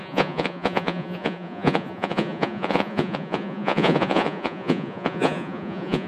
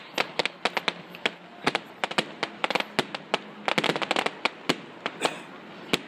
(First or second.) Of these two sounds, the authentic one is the second